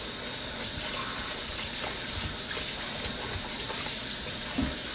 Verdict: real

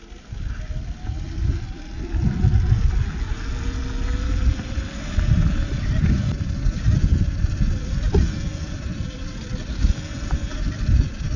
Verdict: real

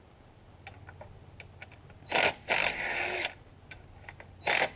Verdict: real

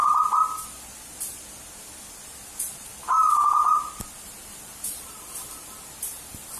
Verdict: real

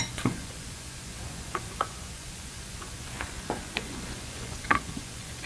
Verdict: fake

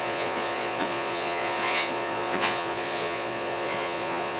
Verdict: fake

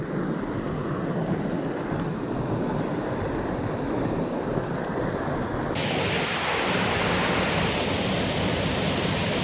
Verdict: real